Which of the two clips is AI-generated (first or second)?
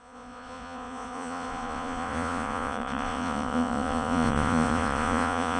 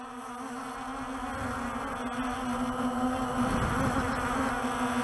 first